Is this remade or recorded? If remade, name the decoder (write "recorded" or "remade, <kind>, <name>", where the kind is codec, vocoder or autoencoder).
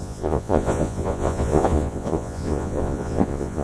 remade, vocoder, Vocos